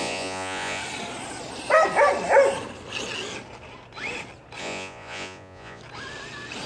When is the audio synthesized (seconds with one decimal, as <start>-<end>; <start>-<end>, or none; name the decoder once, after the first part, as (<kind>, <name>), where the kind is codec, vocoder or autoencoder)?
0.0-0.8 (vocoder, Vocos); 4.6-5.8